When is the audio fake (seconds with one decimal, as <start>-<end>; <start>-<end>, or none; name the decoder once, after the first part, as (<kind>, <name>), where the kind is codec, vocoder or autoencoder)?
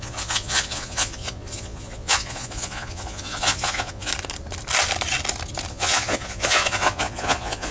0.0-4.1 (vocoder, Vocos); 5.7-7.7